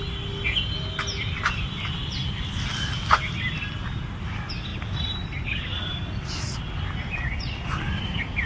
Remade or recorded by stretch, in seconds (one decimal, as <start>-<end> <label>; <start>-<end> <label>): 0.0-8.5 recorded